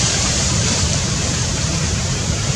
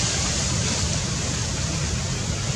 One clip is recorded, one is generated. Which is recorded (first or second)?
second